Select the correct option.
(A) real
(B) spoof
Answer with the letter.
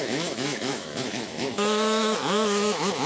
B